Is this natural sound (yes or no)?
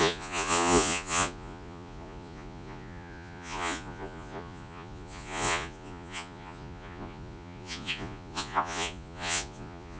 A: no